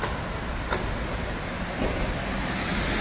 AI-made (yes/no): no